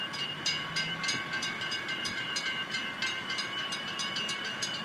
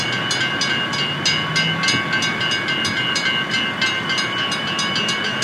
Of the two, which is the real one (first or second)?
second